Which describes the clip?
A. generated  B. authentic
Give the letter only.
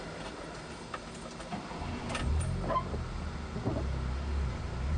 B